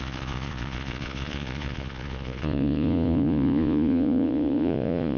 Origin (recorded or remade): remade